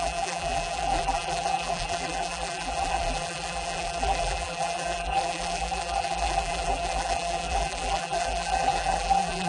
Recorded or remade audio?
remade